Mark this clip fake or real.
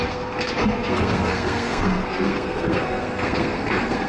fake